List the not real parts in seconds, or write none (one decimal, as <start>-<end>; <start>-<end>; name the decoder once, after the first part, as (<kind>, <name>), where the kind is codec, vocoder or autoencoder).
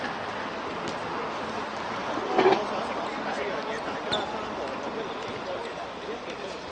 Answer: none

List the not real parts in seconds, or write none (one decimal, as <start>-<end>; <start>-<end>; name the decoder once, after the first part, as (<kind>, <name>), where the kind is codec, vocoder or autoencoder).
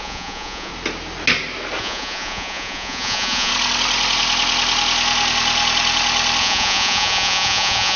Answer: 0.0-0.7 (vocoder, Vocos); 1.8-3.5; 6.4-8.0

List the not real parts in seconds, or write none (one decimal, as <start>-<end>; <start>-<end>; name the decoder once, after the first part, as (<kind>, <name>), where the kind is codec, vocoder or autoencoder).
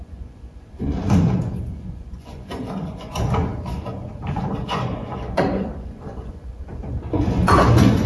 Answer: 0.0-8.1 (vocoder, Vocos)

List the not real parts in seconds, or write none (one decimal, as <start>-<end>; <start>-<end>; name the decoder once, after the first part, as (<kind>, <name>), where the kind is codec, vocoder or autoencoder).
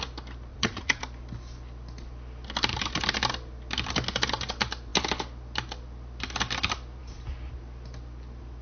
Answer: 0.5-1.0 (vocoder, Vocos)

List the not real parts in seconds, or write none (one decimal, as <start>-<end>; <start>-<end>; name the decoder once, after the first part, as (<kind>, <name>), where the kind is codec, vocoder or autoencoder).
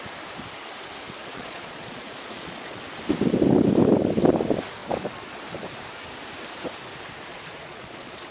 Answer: 1.2-2.8 (vocoder, Vocos); 7.3-8.3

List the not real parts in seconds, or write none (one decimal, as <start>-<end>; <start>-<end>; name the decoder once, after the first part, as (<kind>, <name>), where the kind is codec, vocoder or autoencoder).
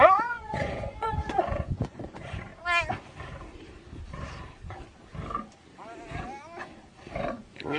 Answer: 0.0-2.5 (vocoder, Vocos); 7.1-7.8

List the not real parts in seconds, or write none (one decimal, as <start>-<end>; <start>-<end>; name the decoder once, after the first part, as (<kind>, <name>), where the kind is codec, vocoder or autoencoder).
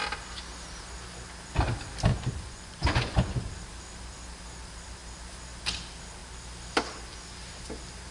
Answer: 2.1-3.5 (vocoder, Vocos)